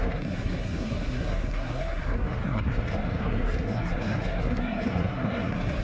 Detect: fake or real fake